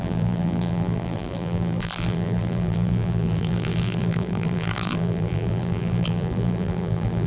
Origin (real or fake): fake